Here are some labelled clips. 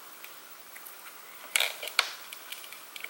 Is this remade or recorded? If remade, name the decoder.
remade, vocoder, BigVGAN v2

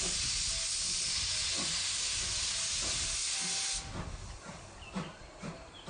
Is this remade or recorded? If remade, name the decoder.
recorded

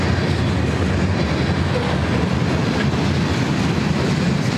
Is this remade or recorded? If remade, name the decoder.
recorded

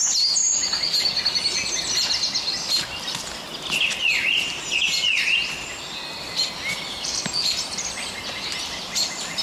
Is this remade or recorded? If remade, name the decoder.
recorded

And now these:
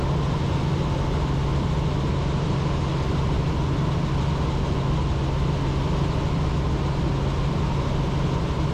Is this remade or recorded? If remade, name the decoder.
recorded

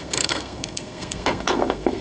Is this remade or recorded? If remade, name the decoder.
remade, codec, SNAC